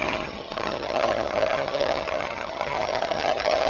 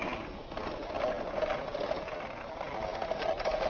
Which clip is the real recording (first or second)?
second